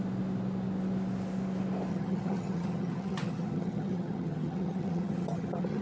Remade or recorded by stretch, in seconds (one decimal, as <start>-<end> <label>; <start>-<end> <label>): 0.0-1.9 recorded; 1.9-5.8 remade